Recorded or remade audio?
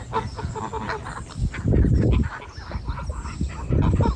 recorded